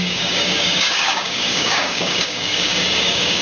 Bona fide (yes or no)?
no